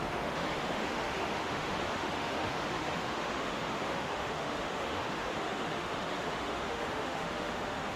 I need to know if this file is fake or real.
fake